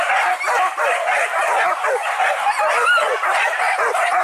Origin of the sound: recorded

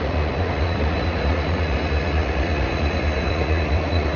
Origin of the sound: remade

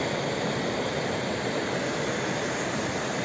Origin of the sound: recorded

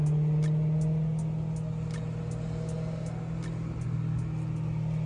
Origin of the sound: recorded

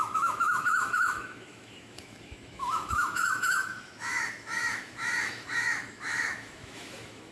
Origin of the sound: remade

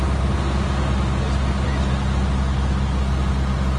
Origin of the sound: recorded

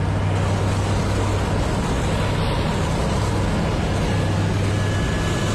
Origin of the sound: recorded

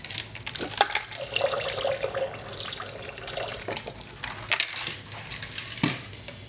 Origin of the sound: recorded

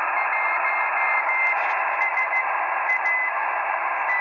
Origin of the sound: recorded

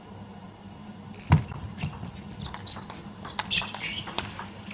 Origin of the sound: recorded